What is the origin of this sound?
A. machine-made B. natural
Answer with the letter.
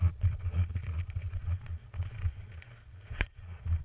A